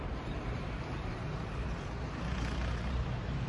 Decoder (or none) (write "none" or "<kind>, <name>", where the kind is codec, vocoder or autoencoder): vocoder, BigVGAN v2